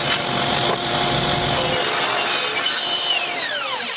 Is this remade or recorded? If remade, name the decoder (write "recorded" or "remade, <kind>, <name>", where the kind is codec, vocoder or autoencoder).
recorded